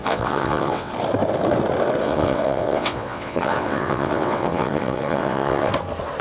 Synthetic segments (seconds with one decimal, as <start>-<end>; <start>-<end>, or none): 0.0-0.9; 2.0-5.7